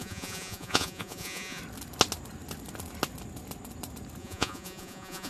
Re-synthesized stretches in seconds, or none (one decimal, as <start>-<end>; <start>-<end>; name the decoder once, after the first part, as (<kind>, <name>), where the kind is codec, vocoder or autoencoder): 0.0-1.6 (vocoder, Vocos); 4.2-5.3